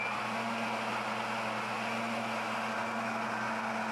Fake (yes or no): no